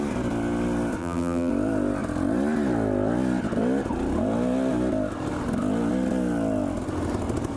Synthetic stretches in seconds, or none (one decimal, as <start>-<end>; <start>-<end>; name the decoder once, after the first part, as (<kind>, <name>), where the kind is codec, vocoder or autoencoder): 1.0-1.5 (vocoder, BigVGAN v2)